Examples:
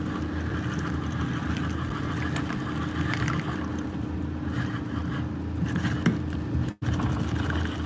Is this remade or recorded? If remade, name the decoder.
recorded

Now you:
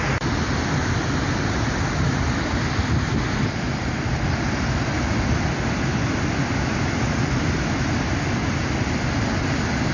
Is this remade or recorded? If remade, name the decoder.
recorded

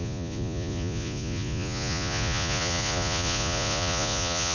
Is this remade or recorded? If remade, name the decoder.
remade, vocoder, Vocos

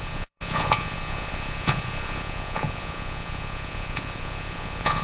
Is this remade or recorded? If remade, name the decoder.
remade, vocoder, Vocos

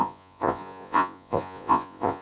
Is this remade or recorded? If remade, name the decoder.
remade, vocoder, Vocos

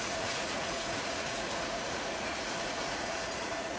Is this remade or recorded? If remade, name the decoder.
remade, vocoder, Vocos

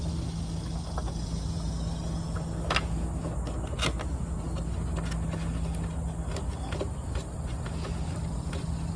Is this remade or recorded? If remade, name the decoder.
recorded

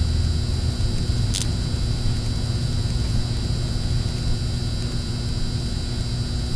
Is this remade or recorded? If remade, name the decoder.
recorded